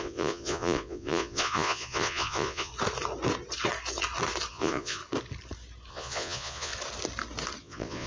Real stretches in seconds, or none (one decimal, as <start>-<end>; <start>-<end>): 2.7-4.5; 5.0-5.9; 6.7-7.6